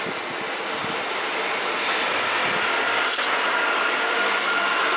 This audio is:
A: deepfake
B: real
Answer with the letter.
B